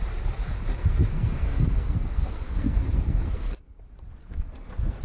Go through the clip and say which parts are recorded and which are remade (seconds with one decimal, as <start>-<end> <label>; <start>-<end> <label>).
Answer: 0.0-0.8 recorded; 0.8-3.8 remade; 3.8-4.2 recorded; 4.2-5.0 remade